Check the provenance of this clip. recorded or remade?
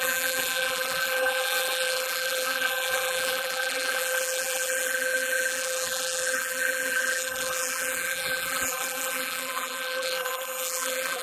remade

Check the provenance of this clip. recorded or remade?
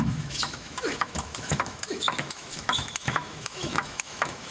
remade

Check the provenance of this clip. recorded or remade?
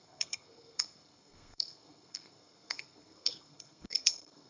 remade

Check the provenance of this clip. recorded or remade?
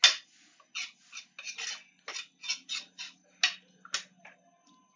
recorded